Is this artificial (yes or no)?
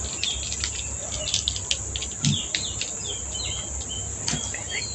no